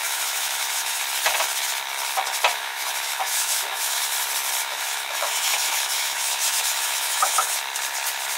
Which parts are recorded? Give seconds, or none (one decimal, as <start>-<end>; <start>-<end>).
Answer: 1.0-2.5; 4.0-4.6; 7.6-8.4